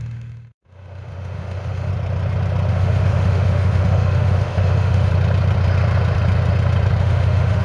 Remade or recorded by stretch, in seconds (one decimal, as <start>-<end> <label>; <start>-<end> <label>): 0.0-1.9 remade; 1.9-2.7 recorded; 2.7-5.1 remade; 5.1-7.0 recorded; 7.0-7.6 remade